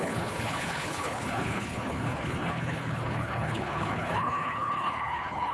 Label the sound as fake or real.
fake